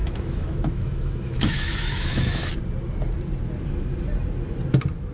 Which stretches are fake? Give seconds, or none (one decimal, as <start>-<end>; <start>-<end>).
0.0-2.5